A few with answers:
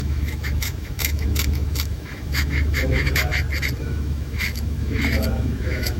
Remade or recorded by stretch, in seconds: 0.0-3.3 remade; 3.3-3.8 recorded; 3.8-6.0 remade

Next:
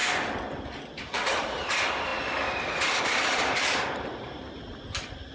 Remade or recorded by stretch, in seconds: 0.0-5.3 recorded

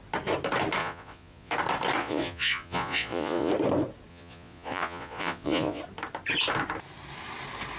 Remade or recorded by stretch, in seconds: 0.0-0.8 recorded; 0.8-1.5 remade; 1.5-2.0 recorded; 2.0-3.5 remade; 3.5-4.1 recorded; 4.1-5.8 remade; 5.8-7.8 recorded

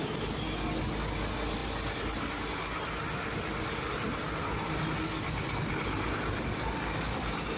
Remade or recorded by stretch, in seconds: 0.0-7.6 recorded

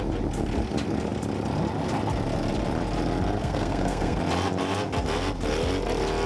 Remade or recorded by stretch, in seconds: 0.0-3.4 recorded; 3.4-4.2 remade; 4.2-6.3 recorded

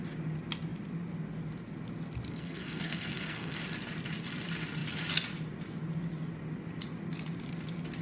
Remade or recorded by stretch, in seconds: 0.0-2.3 recorded; 2.3-3.6 remade; 3.6-8.0 recorded

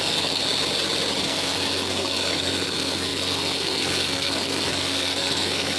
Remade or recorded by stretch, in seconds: 0.0-0.4 remade; 0.4-1.2 recorded; 1.2-5.8 remade